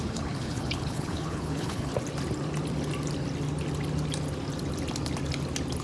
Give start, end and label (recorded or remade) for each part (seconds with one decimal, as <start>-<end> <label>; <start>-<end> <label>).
0.0-1.9 remade; 1.9-5.8 recorded